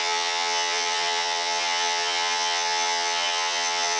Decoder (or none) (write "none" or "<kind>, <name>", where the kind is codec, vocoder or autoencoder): vocoder, HiFi-GAN